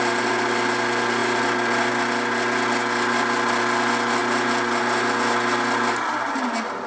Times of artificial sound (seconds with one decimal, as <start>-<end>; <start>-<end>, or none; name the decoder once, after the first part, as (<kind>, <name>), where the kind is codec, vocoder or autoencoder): none

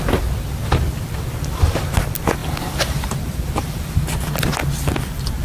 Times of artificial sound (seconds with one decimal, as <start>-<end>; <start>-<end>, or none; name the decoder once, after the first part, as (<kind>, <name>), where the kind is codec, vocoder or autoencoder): 0.0-5.4 (vocoder, BigVGAN v2)

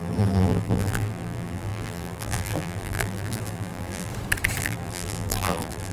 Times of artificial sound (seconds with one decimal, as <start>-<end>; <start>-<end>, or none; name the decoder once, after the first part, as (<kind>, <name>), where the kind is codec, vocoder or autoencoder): 0.0-4.1 (vocoder, BigVGAN v2); 4.6-5.9

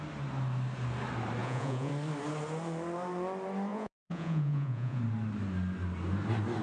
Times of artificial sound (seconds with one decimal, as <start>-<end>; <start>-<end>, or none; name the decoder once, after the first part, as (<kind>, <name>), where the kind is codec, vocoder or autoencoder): 1.4-1.9 (vocoder, Vocos); 3.7-5.0

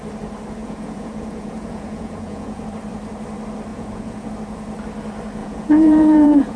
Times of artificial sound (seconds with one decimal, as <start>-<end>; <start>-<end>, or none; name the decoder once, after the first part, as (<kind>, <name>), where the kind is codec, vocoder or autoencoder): 0.6-2.6 (vocoder, Vocos); 3.7-4.3; 5.4-6.6